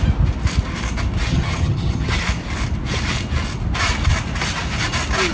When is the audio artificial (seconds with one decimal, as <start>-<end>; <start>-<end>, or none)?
1.3-2.1